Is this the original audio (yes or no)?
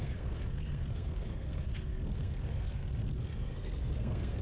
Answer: no